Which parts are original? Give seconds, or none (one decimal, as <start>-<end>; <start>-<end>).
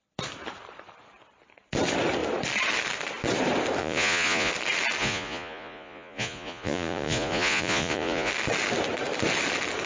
0.0-3.8; 4.5-5.0; 8.3-9.9